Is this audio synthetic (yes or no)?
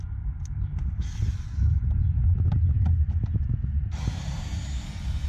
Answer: no